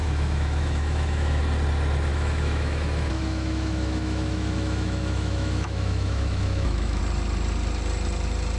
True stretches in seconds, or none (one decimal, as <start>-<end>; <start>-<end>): 1.4-2.1; 7.0-8.6